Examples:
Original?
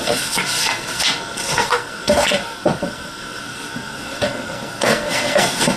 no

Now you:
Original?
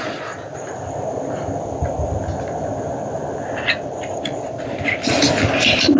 no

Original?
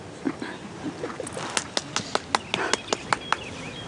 yes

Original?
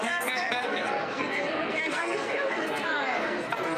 no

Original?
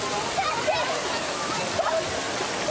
yes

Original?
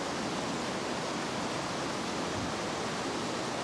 yes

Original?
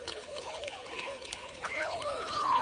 no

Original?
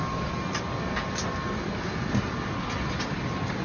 yes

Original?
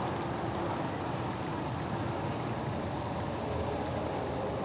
yes